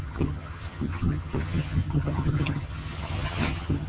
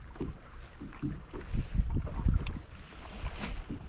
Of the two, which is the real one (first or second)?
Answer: second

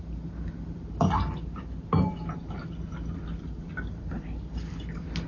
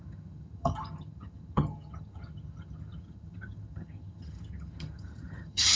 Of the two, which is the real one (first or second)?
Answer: first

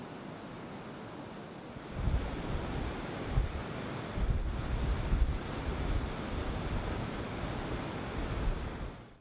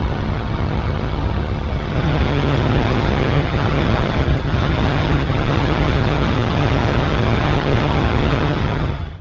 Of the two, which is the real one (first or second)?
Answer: first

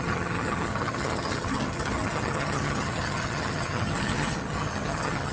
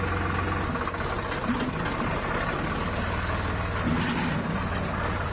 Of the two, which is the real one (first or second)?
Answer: second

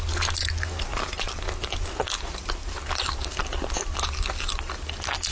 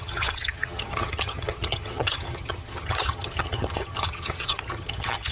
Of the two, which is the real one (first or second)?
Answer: first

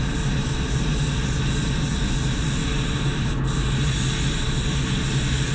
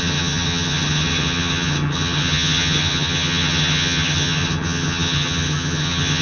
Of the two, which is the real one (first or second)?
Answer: first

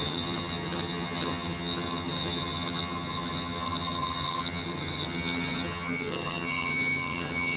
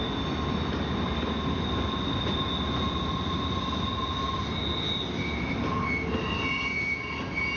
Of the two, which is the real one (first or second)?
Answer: second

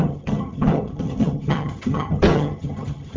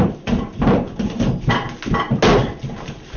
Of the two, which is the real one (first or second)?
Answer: second